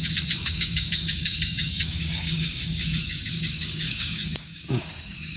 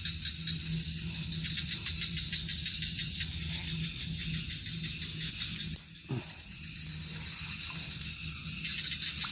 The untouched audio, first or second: second